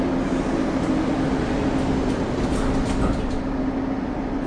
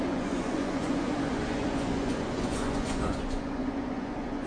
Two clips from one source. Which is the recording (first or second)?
first